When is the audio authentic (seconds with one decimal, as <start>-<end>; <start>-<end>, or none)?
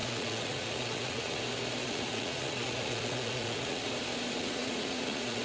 1.4-1.8; 3.9-4.4